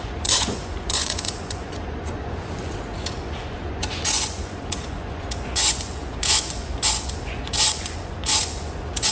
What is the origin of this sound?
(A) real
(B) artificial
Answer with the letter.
B